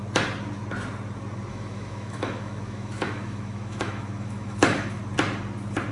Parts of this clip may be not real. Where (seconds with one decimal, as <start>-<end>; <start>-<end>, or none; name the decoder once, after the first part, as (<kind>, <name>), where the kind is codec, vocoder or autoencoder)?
1.5-5.0 (autoencoder, DAC-VAE)